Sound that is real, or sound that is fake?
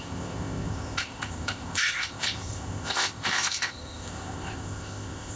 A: fake